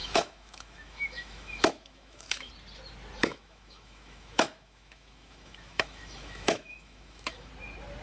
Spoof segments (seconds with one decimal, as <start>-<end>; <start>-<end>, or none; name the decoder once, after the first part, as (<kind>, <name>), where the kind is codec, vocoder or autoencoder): 0.0-2.5 (autoencoder, DAC-VAE); 3.2-7.5

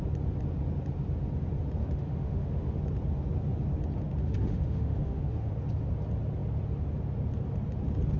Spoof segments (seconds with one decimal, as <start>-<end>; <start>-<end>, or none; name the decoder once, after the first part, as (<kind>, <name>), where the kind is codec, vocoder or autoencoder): 1.8-2.8 (autoencoder, DAC-VAE); 4.2-5.5

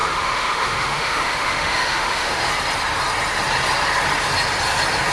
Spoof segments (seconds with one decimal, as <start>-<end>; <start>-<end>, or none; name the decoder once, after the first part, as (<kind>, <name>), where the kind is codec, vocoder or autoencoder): 0.0-2.5 (autoencoder, DAC-VAE)

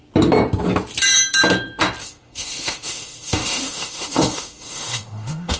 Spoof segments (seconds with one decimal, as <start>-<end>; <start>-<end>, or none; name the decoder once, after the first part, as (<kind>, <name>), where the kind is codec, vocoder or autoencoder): 2.0-5.6 (autoencoder, DAC-VAE)